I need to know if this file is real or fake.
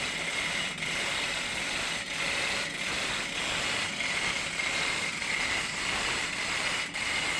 real